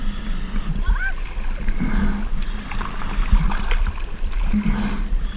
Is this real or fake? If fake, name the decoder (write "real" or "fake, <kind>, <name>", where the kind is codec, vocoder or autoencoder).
real